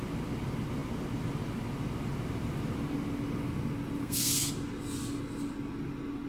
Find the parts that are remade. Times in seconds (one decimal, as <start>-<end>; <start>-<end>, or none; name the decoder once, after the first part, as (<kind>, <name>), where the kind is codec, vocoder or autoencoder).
4.0-4.5 (codec, SNAC)